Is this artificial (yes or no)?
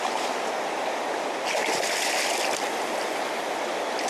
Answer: no